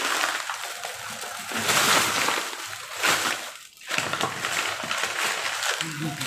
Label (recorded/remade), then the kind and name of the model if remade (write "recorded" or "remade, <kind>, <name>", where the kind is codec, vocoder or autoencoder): recorded